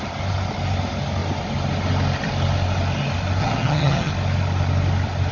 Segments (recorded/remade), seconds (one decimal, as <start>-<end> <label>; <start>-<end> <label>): 0.0-3.4 recorded; 3.4-4.1 remade; 4.1-5.3 recorded

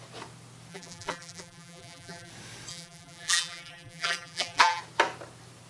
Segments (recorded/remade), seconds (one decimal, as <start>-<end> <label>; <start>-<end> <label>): 0.0-0.7 recorded; 0.7-2.3 remade; 2.3-2.7 recorded; 2.7-4.8 remade; 4.8-5.7 recorded

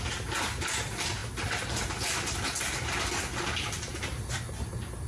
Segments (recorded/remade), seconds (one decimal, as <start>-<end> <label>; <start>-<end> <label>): 0.0-5.1 recorded

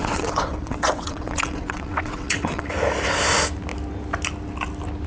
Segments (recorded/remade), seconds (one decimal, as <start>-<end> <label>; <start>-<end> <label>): 0.0-2.7 remade; 2.7-5.1 recorded

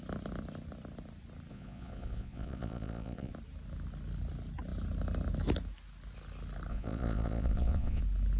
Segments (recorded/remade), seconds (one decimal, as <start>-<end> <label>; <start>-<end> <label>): 0.0-1.5 recorded; 1.5-3.3 remade; 3.3-6.7 recorded; 6.7-8.0 remade; 8.0-8.4 recorded

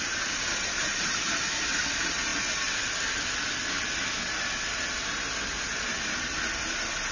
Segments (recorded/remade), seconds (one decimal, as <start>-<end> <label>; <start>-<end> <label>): 0.0-7.1 recorded

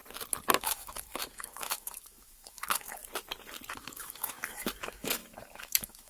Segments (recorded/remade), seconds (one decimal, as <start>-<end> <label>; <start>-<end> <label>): 0.0-0.6 recorded; 0.6-3.0 remade; 3.0-3.7 recorded; 3.7-6.1 remade